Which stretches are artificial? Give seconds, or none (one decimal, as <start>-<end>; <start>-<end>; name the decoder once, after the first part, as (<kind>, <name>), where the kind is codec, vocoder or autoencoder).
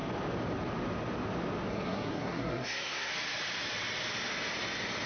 1.7-3.1 (codec, SNAC)